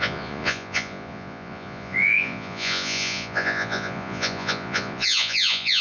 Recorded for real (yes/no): no